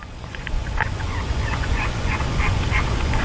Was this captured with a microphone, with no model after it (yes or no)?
no